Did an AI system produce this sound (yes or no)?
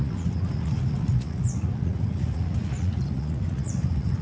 yes